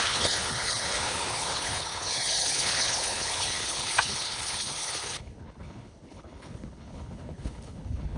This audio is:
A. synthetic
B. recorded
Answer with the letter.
A